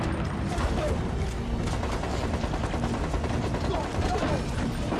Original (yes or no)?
yes